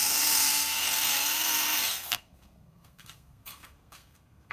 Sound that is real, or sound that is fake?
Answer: fake